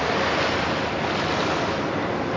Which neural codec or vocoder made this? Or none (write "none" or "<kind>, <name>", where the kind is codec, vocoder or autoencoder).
none